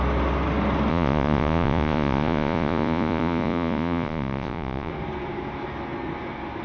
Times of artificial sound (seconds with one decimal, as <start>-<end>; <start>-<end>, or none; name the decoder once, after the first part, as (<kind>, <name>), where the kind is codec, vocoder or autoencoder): 0.9-4.9 (vocoder, Vocos)